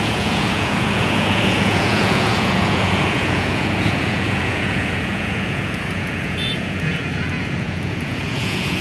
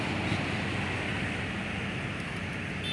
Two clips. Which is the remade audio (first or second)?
first